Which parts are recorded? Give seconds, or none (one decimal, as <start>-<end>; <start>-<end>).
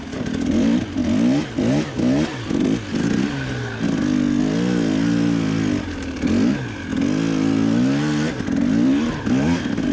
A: 0.0-9.9